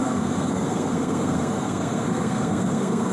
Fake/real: fake